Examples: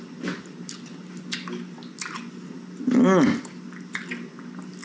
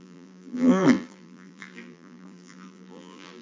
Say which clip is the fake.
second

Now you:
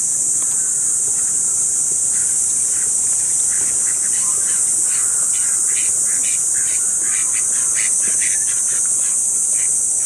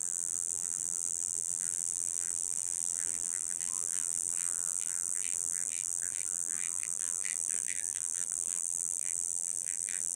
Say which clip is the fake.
second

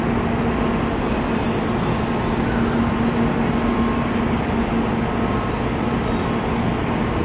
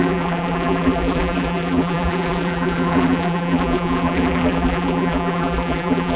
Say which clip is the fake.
second